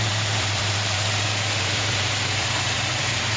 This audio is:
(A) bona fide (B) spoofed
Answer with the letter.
B